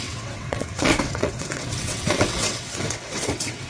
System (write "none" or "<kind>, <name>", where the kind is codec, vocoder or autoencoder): vocoder, WaveNeXt